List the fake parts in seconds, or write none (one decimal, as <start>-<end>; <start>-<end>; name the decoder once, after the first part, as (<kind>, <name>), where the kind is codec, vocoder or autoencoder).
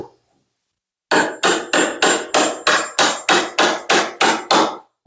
none